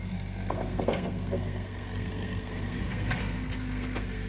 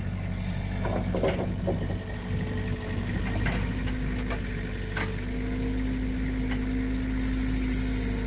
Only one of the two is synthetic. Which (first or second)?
first